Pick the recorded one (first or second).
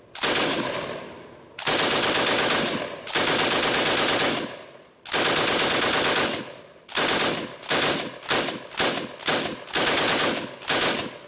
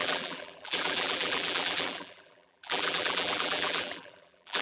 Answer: first